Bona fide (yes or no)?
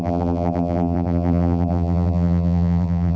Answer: no